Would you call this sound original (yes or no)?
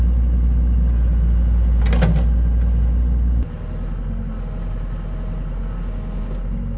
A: yes